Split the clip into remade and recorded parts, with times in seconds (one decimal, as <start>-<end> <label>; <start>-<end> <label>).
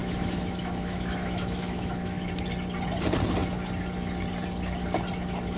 0.0-2.3 remade; 2.3-5.6 recorded